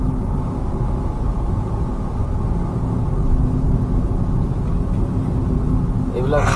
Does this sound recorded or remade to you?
recorded